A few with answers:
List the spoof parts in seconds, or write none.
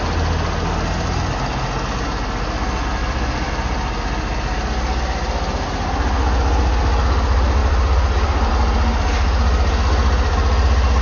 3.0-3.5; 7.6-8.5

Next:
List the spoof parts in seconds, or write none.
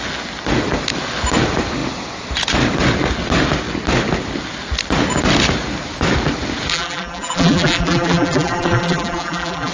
6.7-9.7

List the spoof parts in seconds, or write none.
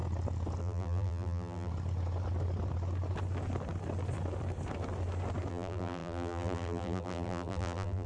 0.6-1.7; 5.5-8.1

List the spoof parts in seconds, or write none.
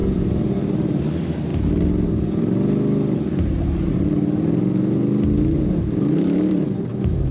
0.0-1.5; 5.5-7.3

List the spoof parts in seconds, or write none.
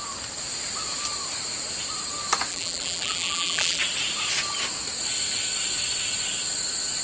2.5-3.8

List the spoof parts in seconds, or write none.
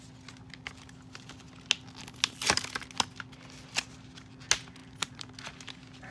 4.8-5.3